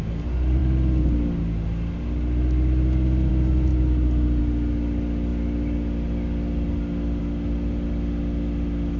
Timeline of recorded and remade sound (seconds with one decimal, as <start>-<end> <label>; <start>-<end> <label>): 0.0-9.0 recorded